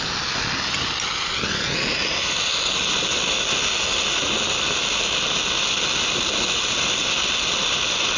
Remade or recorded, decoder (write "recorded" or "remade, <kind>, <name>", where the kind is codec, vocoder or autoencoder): recorded